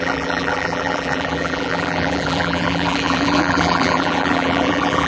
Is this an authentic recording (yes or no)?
no